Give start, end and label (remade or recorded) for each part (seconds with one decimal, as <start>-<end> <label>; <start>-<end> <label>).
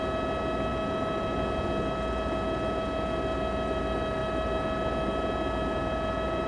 0.0-6.5 recorded